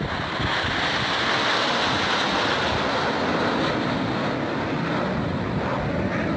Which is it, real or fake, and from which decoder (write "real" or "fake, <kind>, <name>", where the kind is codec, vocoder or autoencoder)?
real